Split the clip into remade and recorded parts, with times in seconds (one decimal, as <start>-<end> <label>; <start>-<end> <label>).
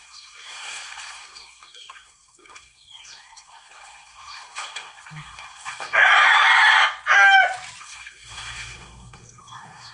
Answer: 0.0-6.1 remade; 6.1-7.8 recorded; 7.8-9.9 remade